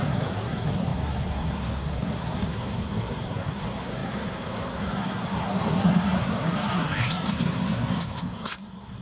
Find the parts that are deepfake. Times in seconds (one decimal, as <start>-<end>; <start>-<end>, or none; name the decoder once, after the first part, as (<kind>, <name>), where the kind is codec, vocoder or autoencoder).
0.0-9.0 (codec, SNAC)